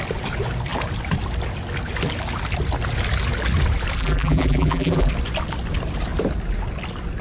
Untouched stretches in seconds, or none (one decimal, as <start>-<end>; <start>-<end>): 0.0-4.0; 5.1-7.2